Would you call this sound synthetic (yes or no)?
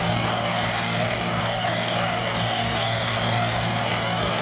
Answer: yes